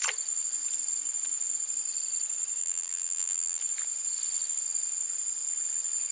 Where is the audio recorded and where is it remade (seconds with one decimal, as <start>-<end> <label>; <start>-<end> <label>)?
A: 0.0-2.6 recorded; 2.6-3.6 remade; 3.6-6.1 recorded